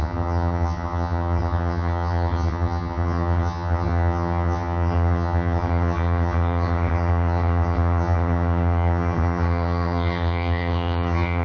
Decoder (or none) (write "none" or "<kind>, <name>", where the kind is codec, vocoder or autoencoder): vocoder, HiFi-GAN